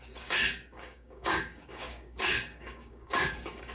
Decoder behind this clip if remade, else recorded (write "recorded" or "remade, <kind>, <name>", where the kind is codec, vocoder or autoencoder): remade, codec, DAC